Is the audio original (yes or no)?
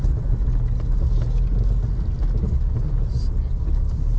yes